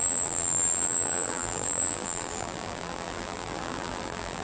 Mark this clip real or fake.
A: fake